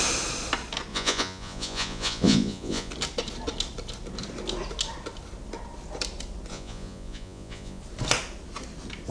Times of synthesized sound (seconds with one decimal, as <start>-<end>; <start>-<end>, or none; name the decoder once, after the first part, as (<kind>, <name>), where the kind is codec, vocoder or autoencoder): 0.9-2.9 (vocoder, Vocos); 6.5-7.8